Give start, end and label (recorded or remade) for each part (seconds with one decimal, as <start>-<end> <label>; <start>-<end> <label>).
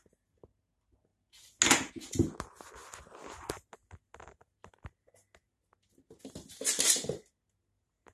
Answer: 0.0-8.1 recorded